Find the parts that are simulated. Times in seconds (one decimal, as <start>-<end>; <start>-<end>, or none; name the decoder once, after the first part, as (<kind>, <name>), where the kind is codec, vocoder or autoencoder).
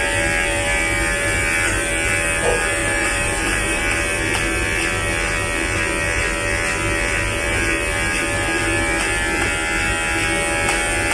2.8-3.8 (vocoder, BigVGAN v2)